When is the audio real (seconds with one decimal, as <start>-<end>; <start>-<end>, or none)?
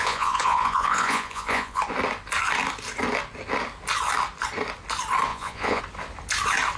1.8-5.3; 5.8-6.8